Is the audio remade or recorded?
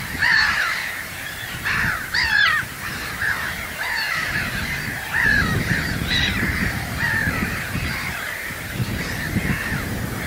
remade